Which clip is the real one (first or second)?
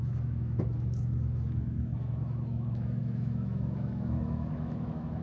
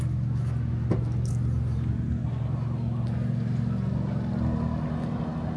second